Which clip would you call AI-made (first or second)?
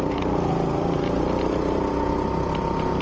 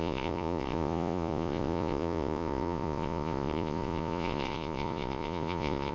second